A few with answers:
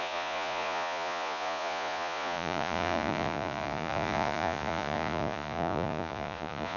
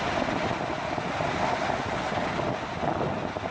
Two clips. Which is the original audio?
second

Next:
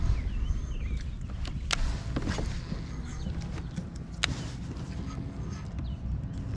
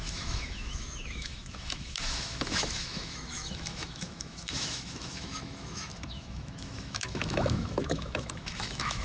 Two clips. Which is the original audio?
first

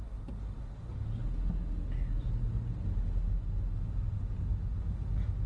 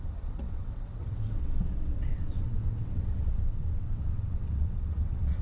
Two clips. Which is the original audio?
first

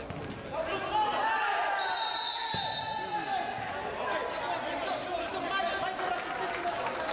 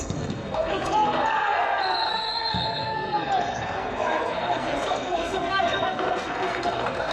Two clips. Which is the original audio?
first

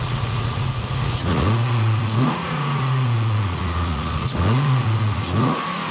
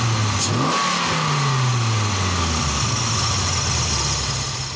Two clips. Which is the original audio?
second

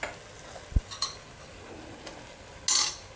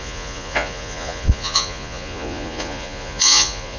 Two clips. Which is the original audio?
first